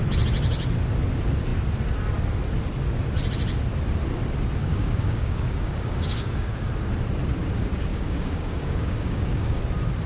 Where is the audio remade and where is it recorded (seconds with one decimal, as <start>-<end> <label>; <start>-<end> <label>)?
0.0-4.6 recorded; 4.6-6.7 remade; 6.7-7.9 recorded; 7.9-9.6 remade; 9.6-10.1 recorded